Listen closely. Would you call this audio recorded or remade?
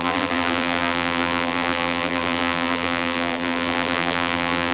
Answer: remade